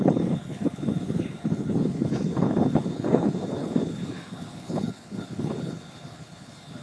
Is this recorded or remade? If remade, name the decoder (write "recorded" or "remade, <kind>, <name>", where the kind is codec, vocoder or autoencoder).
remade, codec, HILCodec